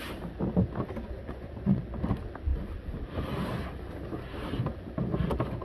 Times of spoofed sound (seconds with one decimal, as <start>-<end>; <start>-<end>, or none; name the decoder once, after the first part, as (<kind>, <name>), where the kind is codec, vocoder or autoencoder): 1.2-1.8 (vocoder, Vocos)

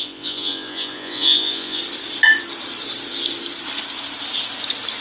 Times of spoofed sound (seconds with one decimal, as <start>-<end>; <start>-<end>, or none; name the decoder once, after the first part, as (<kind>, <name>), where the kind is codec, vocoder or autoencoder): 0.0-1.8 (vocoder, Vocos)